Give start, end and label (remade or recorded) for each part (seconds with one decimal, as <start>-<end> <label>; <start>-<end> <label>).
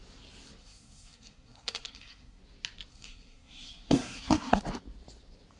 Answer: 0.0-0.6 recorded; 0.6-2.4 remade; 2.4-2.9 recorded; 2.9-4.6 remade; 4.6-5.6 recorded